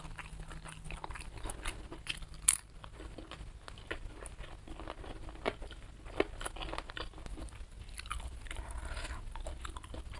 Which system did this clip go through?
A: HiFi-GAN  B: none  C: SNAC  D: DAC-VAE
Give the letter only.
B